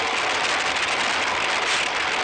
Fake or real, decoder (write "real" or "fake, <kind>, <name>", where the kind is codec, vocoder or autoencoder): real